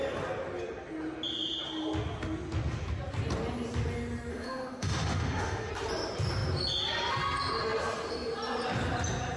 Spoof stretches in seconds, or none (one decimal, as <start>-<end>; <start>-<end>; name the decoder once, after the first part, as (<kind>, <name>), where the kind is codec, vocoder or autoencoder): 4.3-5.7 (autoencoder, DAC-VAE)